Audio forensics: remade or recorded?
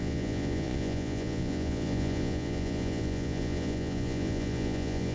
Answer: remade